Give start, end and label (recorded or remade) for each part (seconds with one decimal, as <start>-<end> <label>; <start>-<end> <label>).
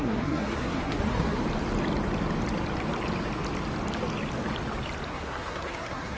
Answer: 0.0-1.4 remade; 1.4-5.1 recorded; 5.1-6.2 remade